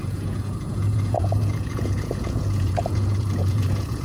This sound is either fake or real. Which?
fake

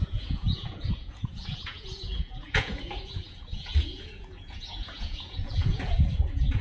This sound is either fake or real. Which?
fake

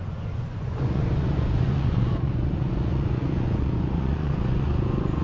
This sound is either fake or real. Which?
fake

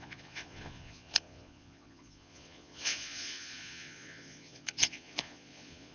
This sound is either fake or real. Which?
fake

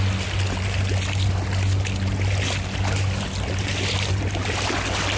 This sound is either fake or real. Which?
real